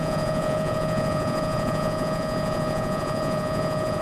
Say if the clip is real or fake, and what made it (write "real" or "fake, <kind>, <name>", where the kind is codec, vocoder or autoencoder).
fake, vocoder, Vocos